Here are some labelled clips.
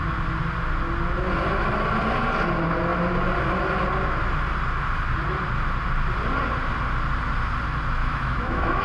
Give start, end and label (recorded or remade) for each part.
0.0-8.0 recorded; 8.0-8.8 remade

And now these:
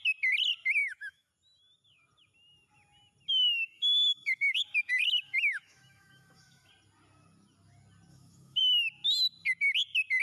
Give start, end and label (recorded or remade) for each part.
0.0-0.8 recorded; 0.8-1.3 remade; 1.3-3.4 recorded; 3.4-6.7 remade; 6.7-8.1 recorded; 8.1-8.6 remade; 8.6-10.2 recorded